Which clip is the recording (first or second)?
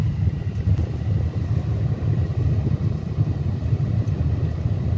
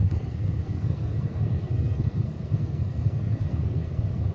first